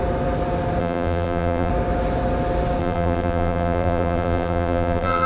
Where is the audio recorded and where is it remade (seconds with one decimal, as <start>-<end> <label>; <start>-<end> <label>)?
0.0-0.8 recorded; 0.8-1.7 remade; 1.7-2.8 recorded; 2.8-5.3 remade